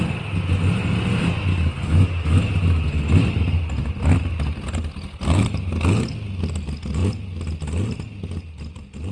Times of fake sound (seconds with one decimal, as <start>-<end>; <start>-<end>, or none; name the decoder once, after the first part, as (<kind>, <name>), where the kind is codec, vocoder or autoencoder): 1.5-2.4 (codec, DAC)

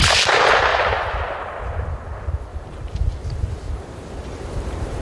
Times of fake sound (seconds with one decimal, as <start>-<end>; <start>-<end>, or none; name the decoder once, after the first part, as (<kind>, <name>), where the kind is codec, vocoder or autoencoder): 0.7-1.4 (vocoder, BigVGAN v2); 2.5-3.7

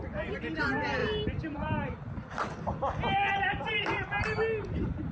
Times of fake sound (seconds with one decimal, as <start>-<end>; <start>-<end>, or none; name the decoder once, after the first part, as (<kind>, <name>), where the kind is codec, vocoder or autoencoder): 1.0-2.6 (vocoder, BigVGAN v2); 3.3-4.1

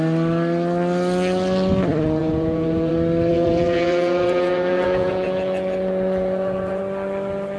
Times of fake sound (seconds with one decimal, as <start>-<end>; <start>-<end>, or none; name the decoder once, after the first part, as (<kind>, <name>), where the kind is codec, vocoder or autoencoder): 2.2-2.9 (vocoder, Vocos); 3.3-6.8

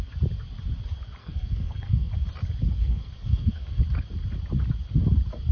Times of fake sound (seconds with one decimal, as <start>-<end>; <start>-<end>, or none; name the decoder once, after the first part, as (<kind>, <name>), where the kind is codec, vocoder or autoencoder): 1.2-2.1 (codec, SNAC); 2.8-3.8

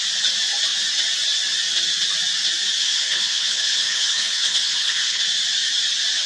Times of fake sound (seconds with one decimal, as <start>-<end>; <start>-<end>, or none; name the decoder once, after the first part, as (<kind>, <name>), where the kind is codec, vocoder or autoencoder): 2.8-5.2 (codec, HILCodec)

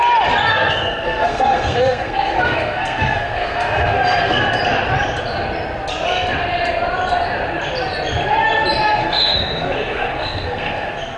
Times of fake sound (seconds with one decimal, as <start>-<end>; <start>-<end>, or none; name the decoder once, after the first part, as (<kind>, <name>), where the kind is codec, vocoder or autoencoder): 0.5-4.4 (codec, SNAC); 9.0-11.2